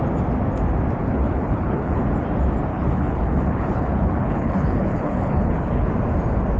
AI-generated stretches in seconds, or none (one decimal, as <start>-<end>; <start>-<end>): 1.0-2.0; 2.7-5.9